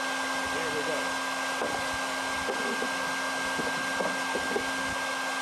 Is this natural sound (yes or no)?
yes